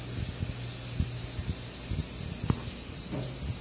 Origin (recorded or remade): recorded